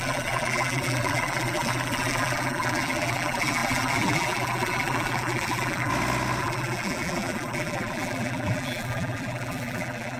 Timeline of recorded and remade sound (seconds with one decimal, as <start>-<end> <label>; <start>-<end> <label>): 0.0-5.9 remade; 5.9-6.4 recorded; 6.4-10.2 remade